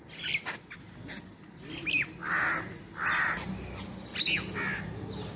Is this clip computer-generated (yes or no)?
no